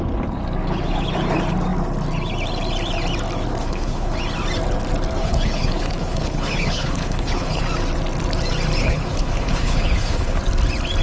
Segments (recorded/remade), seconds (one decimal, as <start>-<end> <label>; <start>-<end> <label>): 0.0-3.6 recorded; 3.6-4.1 remade; 4.1-5.2 recorded; 5.2-7.6 remade; 7.6-8.8 recorded; 8.8-10.4 remade; 10.4-11.0 recorded